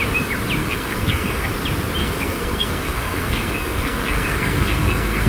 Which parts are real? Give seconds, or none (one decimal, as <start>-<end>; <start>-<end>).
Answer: 0.0-0.6; 1.5-2.0